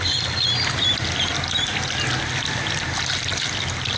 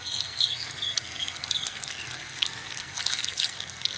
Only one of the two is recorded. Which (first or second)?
first